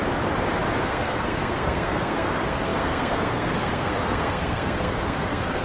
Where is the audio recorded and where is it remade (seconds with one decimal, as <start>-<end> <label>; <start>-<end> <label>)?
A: 0.0-0.8 recorded; 0.8-5.6 remade